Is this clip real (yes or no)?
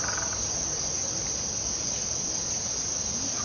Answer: yes